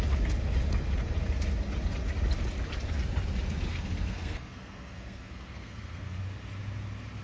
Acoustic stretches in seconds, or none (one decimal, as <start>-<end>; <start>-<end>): 0.0-3.7; 6.2-7.2